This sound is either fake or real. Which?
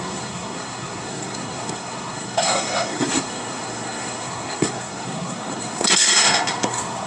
fake